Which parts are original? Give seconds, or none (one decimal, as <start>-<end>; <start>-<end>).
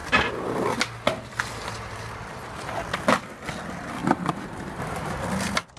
0.0-4.0; 5.2-5.8